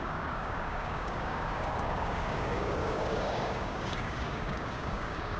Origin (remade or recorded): remade